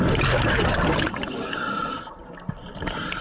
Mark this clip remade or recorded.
recorded